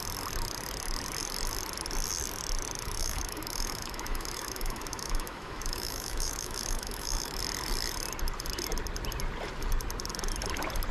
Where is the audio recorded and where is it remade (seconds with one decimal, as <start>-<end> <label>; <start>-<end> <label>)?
0.0-3.0 recorded; 3.0-7.4 remade; 7.4-10.9 recorded